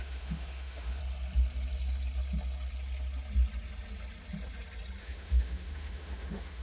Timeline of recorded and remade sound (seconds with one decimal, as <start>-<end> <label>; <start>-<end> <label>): 0.0-1.0 remade; 1.0-5.0 recorded; 5.0-6.6 remade